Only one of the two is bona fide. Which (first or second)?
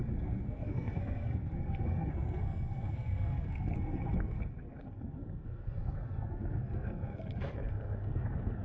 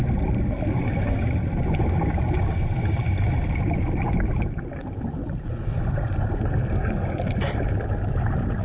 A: second